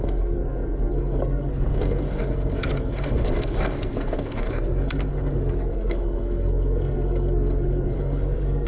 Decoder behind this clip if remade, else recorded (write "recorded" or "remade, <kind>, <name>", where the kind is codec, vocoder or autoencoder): remade, codec, SNAC